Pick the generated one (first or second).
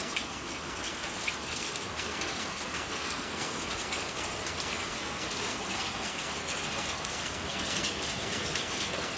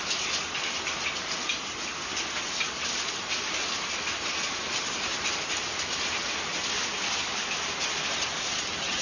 first